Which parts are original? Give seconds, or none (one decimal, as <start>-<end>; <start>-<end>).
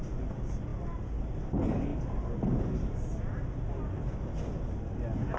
0.0-5.4